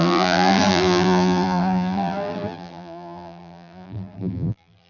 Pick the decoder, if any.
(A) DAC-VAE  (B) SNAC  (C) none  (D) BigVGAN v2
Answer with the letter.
D